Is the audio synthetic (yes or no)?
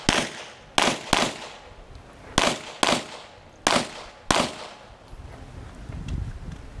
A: no